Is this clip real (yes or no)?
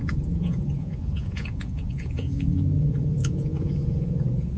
no